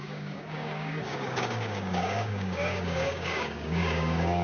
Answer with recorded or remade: remade